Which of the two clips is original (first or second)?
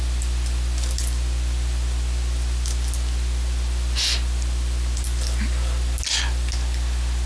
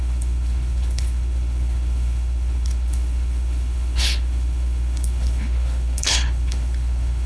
first